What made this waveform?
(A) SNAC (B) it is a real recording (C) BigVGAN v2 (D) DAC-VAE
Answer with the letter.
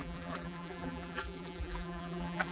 C